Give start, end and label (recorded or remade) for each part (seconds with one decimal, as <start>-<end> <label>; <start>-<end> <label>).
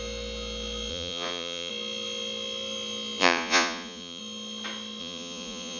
0.0-0.9 recorded; 0.9-1.7 remade; 1.7-3.2 recorded; 3.2-4.2 remade; 4.2-5.0 recorded; 5.0-5.8 remade